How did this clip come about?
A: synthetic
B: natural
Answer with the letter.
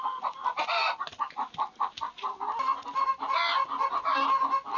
B